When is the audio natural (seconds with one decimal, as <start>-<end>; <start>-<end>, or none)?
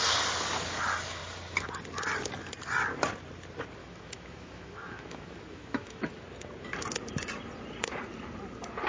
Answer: 0.0-3.8; 6.1-8.9